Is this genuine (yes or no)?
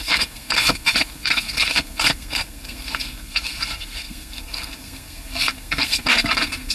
no